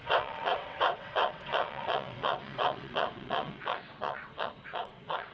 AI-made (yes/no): yes